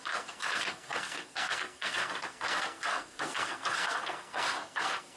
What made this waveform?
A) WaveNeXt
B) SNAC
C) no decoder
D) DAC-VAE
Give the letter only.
B